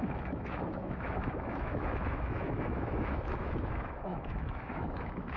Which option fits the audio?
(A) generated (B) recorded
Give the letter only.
A